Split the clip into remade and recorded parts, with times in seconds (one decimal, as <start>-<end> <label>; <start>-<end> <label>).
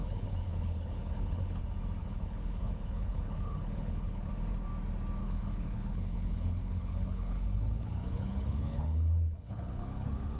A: 0.0-1.6 remade; 1.6-2.0 recorded; 2.0-4.3 remade; 4.3-5.2 recorded; 5.2-10.4 remade